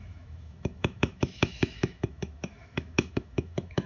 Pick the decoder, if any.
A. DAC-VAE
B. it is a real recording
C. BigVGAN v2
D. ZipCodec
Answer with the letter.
A